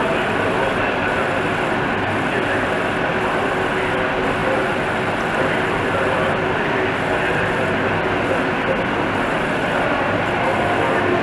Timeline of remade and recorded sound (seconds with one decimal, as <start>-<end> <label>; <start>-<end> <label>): 0.0-11.2 recorded

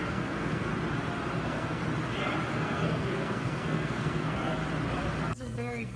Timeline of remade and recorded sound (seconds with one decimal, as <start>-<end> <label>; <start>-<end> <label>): 0.0-0.7 remade; 0.7-1.4 recorded; 1.4-1.8 remade; 1.8-2.5 recorded; 2.5-4.6 remade; 4.6-5.2 recorded; 5.2-6.0 remade

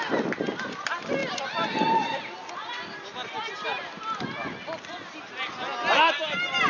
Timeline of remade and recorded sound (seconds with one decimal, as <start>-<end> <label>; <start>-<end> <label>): 0.0-6.7 recorded

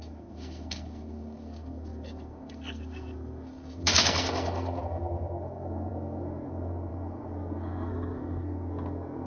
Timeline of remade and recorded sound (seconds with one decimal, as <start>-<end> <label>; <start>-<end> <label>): 0.0-9.3 remade